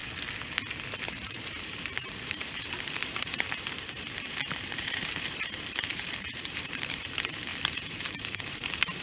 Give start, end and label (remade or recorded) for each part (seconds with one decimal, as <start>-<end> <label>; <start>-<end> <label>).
0.0-1.2 recorded; 1.2-9.0 remade